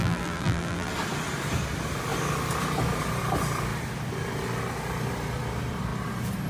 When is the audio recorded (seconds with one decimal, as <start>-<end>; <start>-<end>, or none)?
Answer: 0.9-6.5